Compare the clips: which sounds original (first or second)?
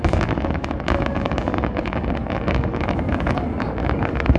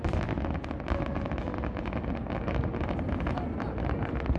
second